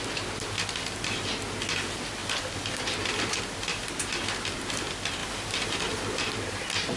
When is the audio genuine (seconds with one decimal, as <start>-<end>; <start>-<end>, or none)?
0.0-2.2; 3.4-7.0